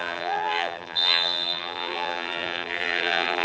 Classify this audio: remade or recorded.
remade